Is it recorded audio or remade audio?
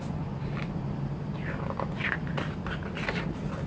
recorded